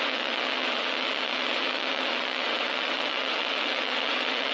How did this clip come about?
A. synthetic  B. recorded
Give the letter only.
A